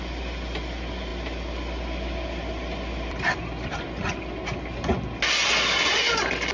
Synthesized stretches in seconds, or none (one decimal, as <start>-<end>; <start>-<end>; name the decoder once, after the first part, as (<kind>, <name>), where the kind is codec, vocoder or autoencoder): none